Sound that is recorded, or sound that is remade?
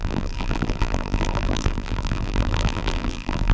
remade